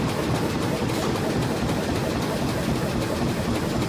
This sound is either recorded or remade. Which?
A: remade